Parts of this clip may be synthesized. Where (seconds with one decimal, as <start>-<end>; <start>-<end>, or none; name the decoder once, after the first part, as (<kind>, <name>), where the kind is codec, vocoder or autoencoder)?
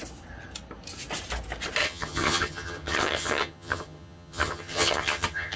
1.8-5.6 (vocoder, HiFi-GAN)